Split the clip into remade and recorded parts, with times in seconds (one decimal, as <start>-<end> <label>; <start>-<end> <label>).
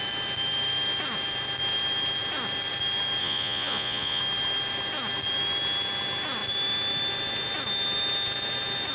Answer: 0.0-3.2 recorded; 3.2-4.2 remade; 4.2-8.9 recorded